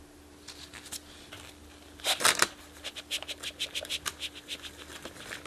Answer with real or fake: real